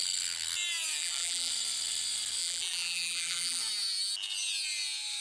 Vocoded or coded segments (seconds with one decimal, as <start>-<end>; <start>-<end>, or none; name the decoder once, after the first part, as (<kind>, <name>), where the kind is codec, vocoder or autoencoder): 1.0-1.5 (vocoder, BigVGAN v2); 2.4-3.6